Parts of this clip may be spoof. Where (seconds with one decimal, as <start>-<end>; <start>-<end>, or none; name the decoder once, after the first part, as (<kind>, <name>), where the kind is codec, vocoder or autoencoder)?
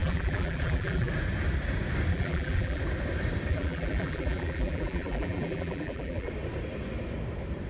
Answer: 0.0-1.1 (vocoder, BigVGAN v2); 2.1-2.8; 3.5-6.3